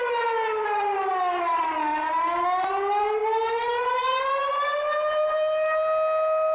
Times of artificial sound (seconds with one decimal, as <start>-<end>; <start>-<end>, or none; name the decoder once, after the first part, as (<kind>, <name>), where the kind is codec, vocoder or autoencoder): none